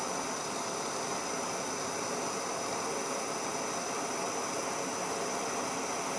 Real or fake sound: real